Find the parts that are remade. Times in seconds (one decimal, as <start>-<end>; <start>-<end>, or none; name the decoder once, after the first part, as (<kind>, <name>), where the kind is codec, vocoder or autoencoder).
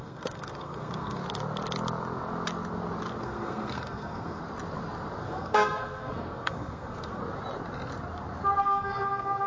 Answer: 0.0-1.2 (codec, SNAC); 3.2-4.4; 5.2-7.2; 8.6-9.5